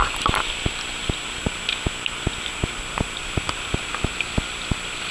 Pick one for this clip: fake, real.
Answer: real